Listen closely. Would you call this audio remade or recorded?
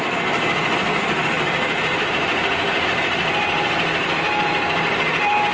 remade